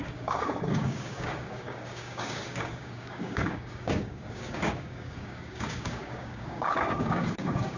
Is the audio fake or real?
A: fake